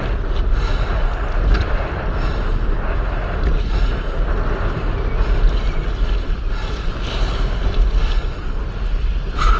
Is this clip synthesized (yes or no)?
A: no